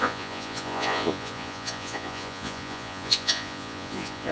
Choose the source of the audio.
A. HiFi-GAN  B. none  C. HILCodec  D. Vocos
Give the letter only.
D